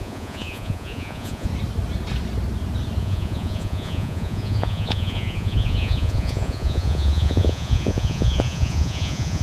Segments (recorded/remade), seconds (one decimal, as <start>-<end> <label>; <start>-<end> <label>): 0.0-1.5 remade; 1.5-3.0 recorded; 3.0-9.4 remade